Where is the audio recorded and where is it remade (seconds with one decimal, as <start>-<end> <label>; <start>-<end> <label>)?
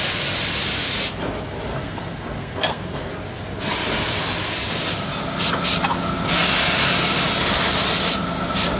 0.0-1.7 recorded; 1.7-3.1 remade; 3.1-8.8 recorded